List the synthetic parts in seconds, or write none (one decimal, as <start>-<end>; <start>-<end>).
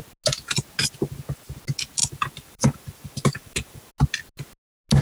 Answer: 2.0-3.9